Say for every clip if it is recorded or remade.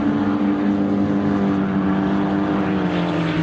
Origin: recorded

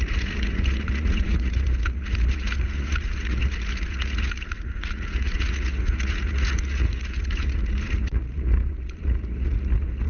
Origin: remade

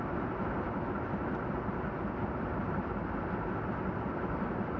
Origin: recorded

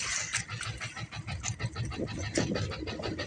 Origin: recorded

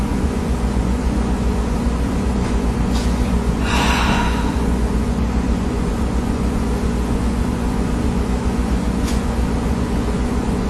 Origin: remade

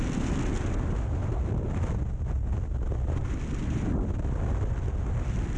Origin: recorded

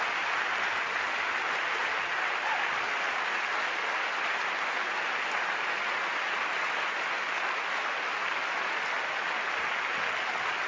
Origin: recorded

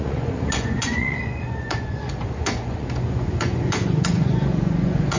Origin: remade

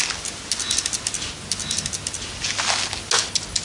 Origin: recorded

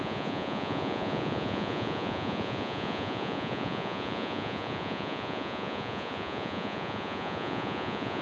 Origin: remade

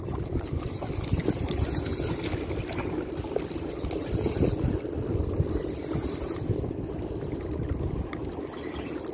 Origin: recorded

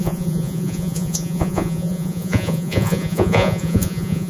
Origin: remade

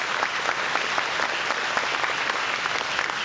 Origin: recorded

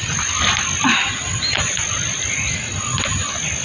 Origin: recorded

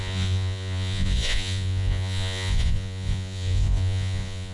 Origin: remade